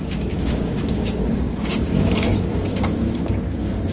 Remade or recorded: remade